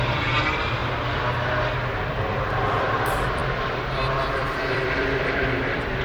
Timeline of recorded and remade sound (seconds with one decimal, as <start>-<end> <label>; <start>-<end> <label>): 0.0-0.8 remade; 0.8-1.9 recorded; 1.9-6.0 remade